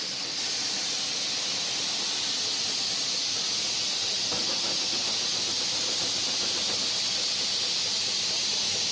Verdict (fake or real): real